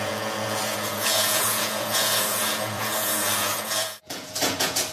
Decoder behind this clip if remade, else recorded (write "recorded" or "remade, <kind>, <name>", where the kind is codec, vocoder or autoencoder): remade, vocoder, Vocos